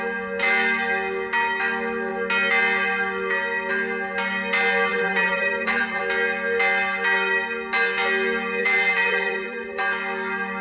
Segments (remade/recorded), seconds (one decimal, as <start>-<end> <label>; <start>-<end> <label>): 0.0-4.9 recorded; 4.9-6.0 remade; 6.0-8.6 recorded; 8.6-9.8 remade; 9.8-10.6 recorded